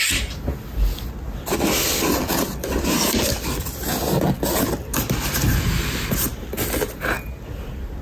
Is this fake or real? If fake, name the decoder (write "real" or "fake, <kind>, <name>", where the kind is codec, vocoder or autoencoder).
real